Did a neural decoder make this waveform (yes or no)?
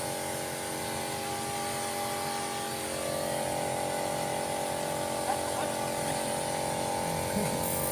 no